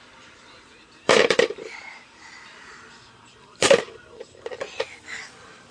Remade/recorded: remade